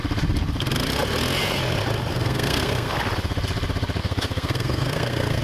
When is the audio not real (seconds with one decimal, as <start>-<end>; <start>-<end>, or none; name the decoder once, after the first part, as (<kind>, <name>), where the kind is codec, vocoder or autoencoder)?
2.1-2.9 (codec, SNAC); 4.0-5.4